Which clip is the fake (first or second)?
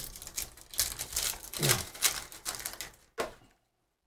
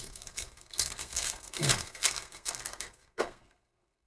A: second